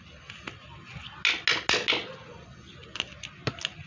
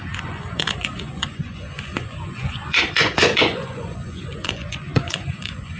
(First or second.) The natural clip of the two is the first